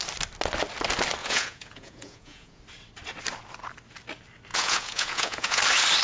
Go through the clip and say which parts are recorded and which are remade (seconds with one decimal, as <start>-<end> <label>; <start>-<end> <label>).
0.0-1.2 recorded; 1.2-2.6 remade; 2.6-4.5 recorded; 4.5-5.6 remade; 5.6-6.0 recorded